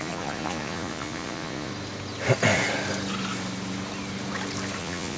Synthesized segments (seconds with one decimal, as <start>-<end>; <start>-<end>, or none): 0.0-1.7; 4.8-5.2